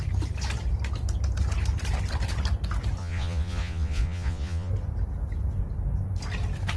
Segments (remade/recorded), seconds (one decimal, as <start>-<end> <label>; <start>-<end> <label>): 0.0-3.0 recorded; 3.0-4.7 remade; 4.7-6.8 recorded